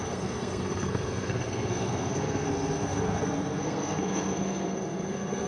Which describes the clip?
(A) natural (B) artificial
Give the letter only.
B